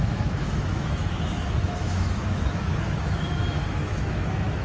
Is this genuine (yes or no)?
no